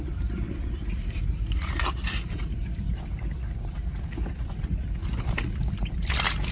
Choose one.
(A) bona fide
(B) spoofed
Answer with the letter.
A